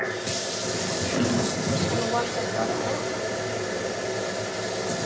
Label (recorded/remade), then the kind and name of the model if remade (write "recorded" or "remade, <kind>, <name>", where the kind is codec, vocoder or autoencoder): recorded